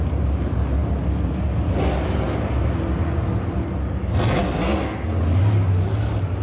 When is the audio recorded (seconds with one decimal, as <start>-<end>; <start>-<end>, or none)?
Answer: 0.0-6.4